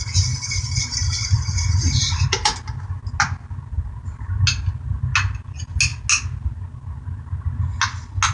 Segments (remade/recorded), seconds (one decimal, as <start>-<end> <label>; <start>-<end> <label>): 0.0-1.0 recorded; 1.0-3.0 remade; 3.0-8.3 recorded